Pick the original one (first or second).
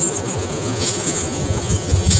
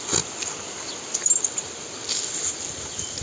second